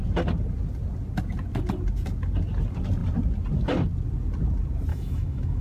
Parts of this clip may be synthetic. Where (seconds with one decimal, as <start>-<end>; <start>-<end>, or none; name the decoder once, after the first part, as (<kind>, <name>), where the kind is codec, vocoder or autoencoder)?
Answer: 4.9-5.6 (autoencoder, DAC-VAE)